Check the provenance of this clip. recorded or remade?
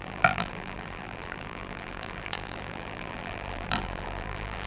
remade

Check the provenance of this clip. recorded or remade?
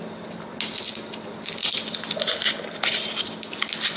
recorded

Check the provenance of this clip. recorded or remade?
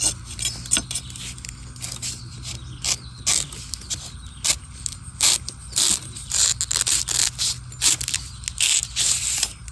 recorded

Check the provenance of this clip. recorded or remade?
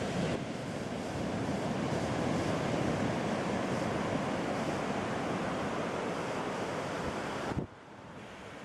remade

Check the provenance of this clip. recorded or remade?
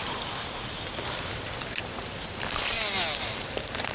recorded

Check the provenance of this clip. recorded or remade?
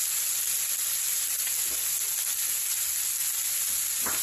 recorded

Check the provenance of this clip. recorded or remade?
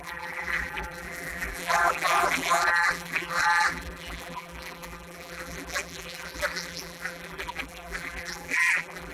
remade